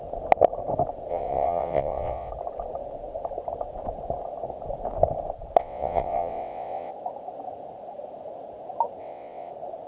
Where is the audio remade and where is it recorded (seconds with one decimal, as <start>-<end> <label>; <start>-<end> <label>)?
0.0-1.1 recorded; 1.1-2.3 remade; 2.3-5.6 recorded; 5.6-6.9 remade; 6.9-9.0 recorded; 9.0-9.5 remade; 9.5-9.9 recorded

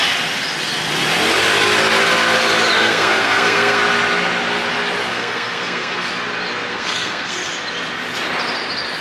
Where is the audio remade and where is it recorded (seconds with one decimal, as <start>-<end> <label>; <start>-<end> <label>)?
0.0-2.8 recorded; 2.8-3.8 remade; 3.8-5.1 recorded; 5.1-6.1 remade; 6.1-6.7 recorded; 6.7-7.5 remade; 7.5-9.0 recorded

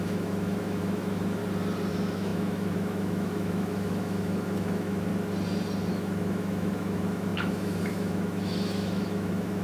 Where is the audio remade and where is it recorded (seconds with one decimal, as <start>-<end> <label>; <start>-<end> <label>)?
0.0-1.4 remade; 1.4-1.9 recorded; 1.9-5.1 remade; 5.1-5.9 recorded; 5.9-9.6 remade